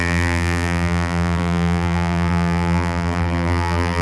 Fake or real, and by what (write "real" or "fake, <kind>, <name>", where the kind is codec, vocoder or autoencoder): fake, vocoder, BigVGAN v2